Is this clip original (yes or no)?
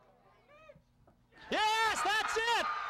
yes